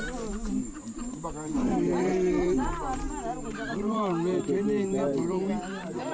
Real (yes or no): no